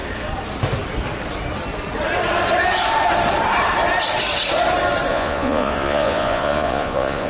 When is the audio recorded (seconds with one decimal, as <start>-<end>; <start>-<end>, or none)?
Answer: 0.0-5.1